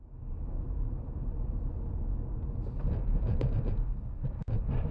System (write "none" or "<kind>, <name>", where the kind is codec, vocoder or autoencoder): none